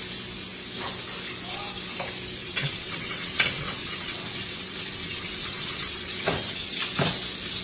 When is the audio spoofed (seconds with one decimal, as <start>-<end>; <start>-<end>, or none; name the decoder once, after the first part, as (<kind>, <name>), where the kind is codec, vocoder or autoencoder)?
2.4-6.8 (vocoder, WaveNeXt)